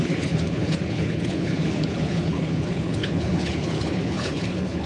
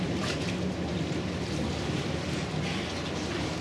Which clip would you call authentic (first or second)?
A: second